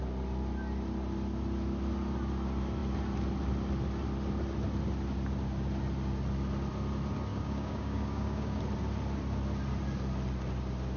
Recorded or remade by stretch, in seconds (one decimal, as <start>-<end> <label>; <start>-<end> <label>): 0.0-7.3 recorded; 7.3-8.6 remade; 8.6-11.0 recorded